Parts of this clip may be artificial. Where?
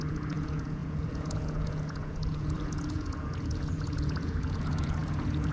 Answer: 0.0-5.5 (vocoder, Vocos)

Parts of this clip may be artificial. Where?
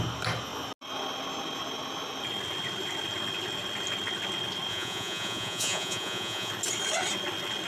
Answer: 4.7-6.5 (vocoder, Vocos)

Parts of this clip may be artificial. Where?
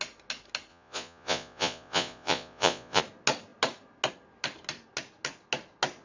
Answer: 0.7-3.0 (vocoder, Vocos)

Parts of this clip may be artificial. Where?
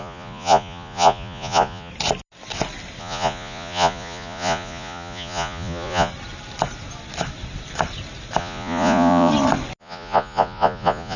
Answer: 0.0-1.9 (vocoder, Vocos); 3.0-6.1; 8.4-9.3; 9.8-11.2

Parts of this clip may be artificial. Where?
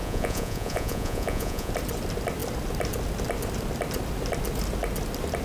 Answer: 0.0-1.7 (vocoder, Vocos)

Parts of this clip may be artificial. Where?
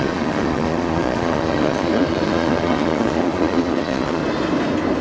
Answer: 0.0-4.2 (vocoder, Vocos)